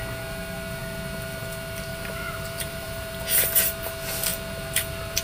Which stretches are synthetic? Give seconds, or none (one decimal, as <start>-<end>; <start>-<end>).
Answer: 1.9-3.1